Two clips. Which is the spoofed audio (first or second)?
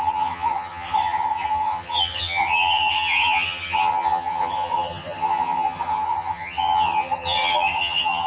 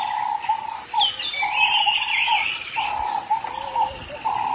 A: first